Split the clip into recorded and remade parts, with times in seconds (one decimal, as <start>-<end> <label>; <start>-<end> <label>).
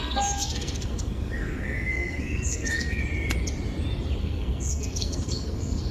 0.0-3.0 remade; 3.0-4.2 recorded; 4.2-5.9 remade